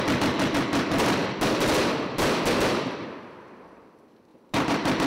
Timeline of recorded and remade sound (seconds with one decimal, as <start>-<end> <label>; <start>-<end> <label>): 0.0-1.2 recorded; 1.2-3.9 remade; 3.9-4.3 recorded; 4.3-5.1 remade